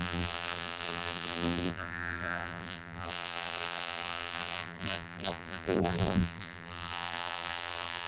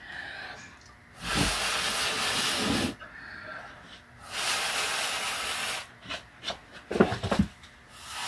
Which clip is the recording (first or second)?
second